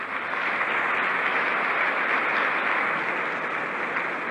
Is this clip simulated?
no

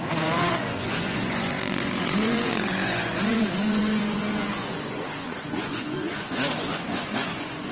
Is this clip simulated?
yes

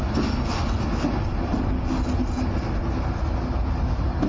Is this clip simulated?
no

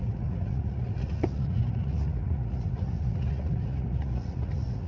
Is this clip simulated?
yes